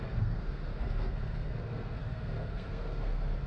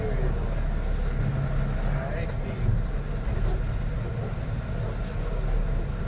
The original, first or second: second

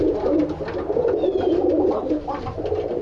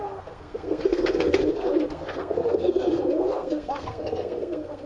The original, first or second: first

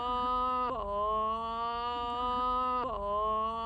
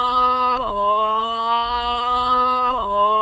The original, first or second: first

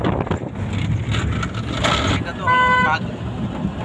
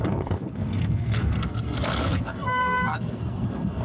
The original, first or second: first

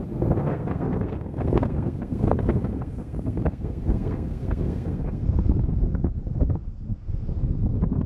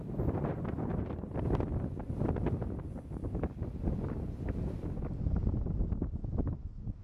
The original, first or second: second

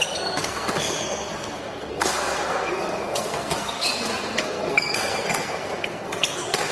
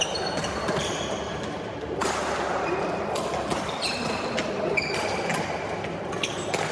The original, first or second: second